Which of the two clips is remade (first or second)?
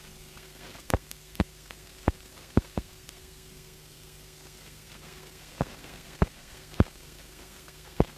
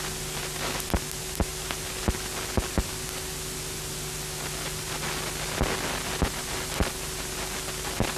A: first